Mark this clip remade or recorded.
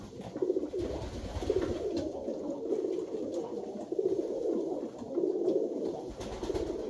recorded